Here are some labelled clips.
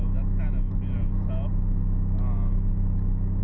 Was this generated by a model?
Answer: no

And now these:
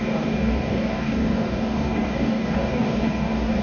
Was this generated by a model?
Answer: yes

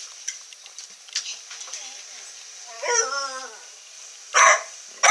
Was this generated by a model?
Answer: no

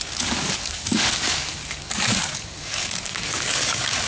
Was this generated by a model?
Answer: yes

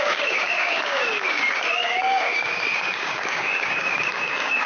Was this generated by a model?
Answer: yes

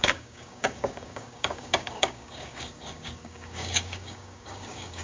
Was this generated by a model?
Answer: yes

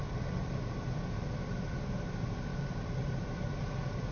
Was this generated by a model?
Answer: no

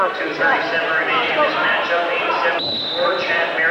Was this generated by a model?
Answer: no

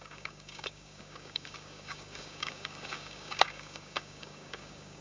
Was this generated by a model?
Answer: yes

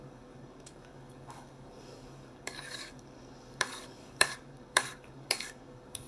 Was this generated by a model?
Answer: yes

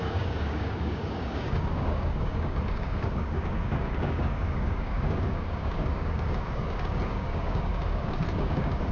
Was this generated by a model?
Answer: yes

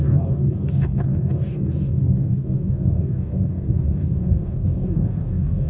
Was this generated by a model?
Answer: yes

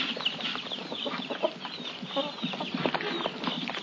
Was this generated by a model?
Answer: no